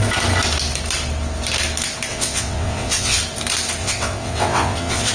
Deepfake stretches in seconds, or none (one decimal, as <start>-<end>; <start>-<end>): 2.1-3.2; 3.8-5.1

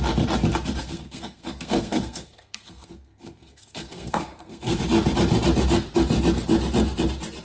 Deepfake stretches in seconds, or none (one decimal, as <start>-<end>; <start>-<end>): 0.8-4.8

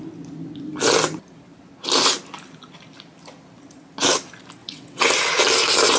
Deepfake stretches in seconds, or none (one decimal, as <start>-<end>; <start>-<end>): 4.6-5.1

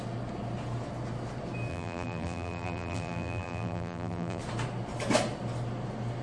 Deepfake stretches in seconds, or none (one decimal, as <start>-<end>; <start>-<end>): 1.7-4.4

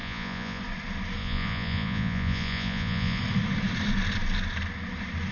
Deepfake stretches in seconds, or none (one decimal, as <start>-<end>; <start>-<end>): 0.0-0.6; 1.2-3.2